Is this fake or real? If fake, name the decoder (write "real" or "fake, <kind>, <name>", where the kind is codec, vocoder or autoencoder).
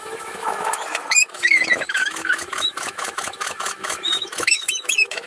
fake, autoencoder, DAC-VAE